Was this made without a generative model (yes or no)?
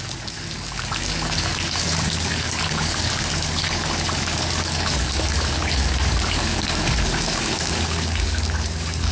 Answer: no